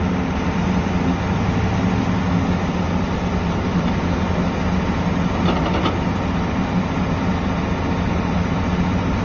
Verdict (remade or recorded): recorded